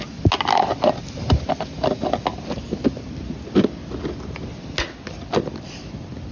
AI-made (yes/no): no